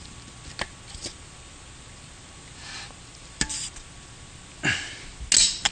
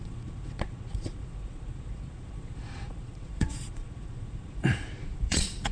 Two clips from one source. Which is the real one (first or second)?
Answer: first